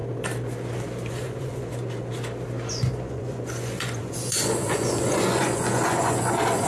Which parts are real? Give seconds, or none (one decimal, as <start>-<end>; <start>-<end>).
0.0-1.1; 1.7-2.7